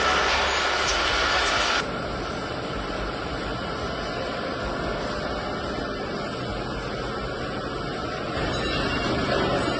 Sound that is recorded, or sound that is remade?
recorded